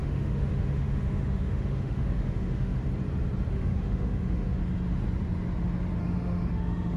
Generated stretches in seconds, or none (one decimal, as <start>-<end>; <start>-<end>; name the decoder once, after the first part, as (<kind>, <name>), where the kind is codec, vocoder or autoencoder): 0.0-2.8 (autoencoder, DAC-VAE); 3.5-4.6; 6.0-7.0